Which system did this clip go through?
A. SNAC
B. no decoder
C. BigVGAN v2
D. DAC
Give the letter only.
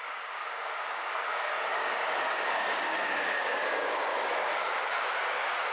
D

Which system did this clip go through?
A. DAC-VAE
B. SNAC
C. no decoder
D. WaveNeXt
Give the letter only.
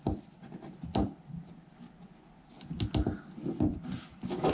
C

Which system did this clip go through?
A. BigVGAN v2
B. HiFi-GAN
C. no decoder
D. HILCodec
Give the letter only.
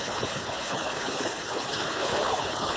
D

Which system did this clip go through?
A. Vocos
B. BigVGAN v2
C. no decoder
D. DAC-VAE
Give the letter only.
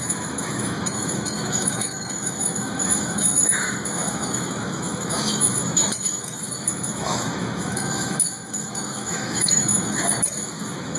D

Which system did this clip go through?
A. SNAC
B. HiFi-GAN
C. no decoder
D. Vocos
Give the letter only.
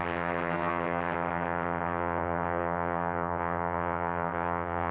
B